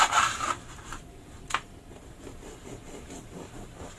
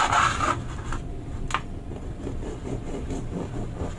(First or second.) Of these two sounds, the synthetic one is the first